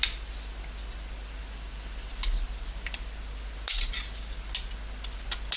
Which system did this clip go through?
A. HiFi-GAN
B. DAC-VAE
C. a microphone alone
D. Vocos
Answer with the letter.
C